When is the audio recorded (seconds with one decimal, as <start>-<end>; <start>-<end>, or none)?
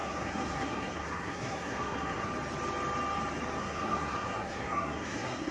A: 2.3-3.6